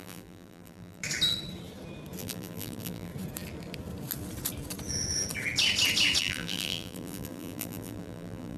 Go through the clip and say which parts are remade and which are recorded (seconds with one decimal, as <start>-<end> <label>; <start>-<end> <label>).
0.0-1.0 remade; 1.0-2.2 recorded; 2.2-3.1 remade; 3.1-6.2 recorded; 6.2-8.6 remade